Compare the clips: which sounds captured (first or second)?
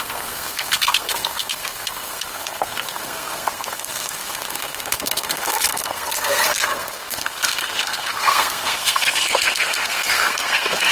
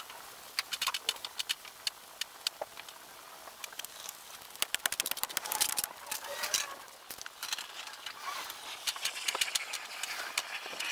second